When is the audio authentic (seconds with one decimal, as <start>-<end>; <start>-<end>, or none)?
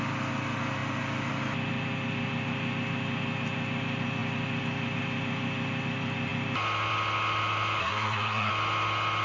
0.0-7.8; 8.5-9.2